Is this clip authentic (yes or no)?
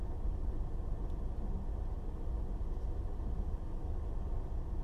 yes